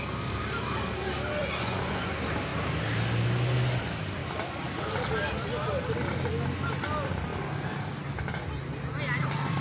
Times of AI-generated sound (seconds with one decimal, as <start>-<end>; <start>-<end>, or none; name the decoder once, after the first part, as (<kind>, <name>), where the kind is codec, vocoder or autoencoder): 1.4-2.1 (vocoder, Vocos)